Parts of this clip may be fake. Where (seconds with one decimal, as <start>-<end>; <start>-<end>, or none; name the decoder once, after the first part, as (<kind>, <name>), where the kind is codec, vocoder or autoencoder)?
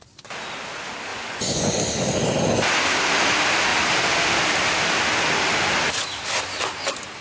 1.1-1.8 (vocoder, Vocos)